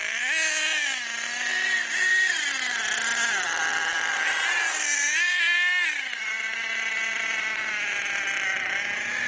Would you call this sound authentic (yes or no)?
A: yes